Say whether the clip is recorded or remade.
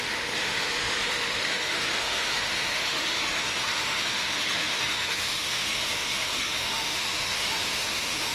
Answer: remade